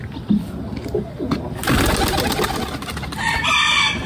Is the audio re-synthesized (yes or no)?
no